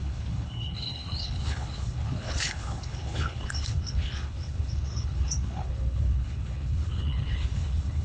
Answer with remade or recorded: remade